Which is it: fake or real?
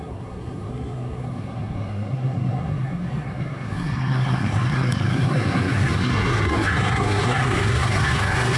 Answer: fake